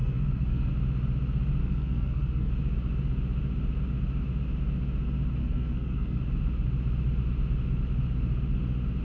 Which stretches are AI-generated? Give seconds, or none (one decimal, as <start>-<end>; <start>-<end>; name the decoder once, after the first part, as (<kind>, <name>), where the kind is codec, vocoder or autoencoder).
0.0-0.7 (codec, SNAC); 1.6-2.5; 5.4-6.2